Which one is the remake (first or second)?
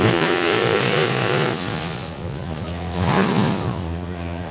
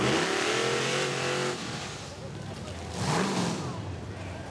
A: first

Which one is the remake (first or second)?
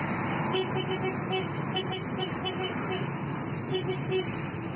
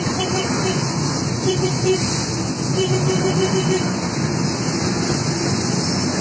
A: second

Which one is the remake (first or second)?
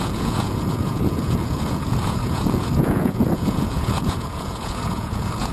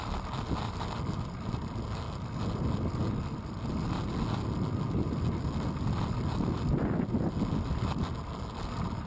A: first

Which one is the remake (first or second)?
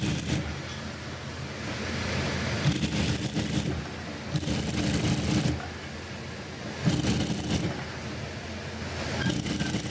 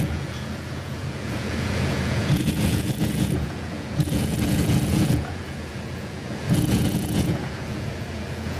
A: second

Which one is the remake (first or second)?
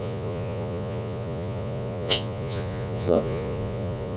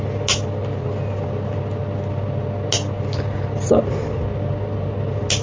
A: first